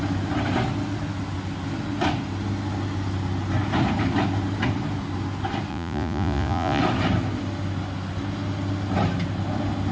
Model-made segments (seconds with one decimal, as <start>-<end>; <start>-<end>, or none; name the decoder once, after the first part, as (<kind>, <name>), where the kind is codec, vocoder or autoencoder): 5.7-6.8 (vocoder, Vocos)